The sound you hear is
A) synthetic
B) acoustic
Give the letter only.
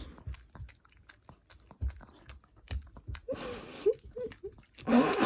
B